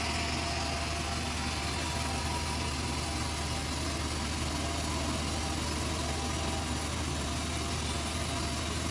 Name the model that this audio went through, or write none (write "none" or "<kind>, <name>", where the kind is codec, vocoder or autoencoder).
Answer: none